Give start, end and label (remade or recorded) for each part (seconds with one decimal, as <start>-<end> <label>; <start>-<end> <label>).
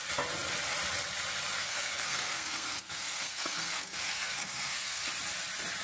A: 0.0-1.6 recorded; 1.6-5.1 remade; 5.1-5.8 recorded